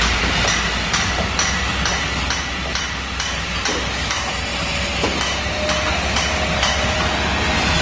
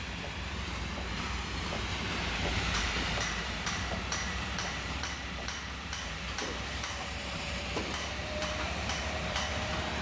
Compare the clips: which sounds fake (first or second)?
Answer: second